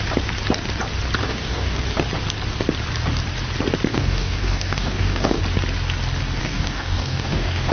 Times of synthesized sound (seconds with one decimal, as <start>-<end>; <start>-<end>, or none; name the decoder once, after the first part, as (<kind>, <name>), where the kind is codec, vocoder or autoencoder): 1.2-1.8 (codec, DAC); 3.9-5.4; 6.4-7.7